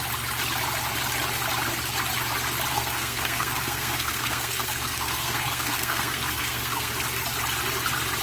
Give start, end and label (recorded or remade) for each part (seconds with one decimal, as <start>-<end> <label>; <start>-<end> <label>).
0.0-2.7 recorded; 2.7-6.9 remade; 6.9-8.2 recorded